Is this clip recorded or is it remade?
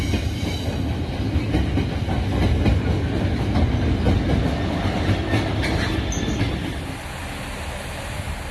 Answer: recorded